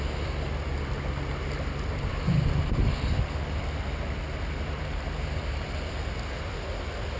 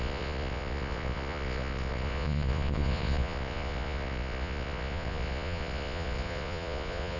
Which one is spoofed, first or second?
second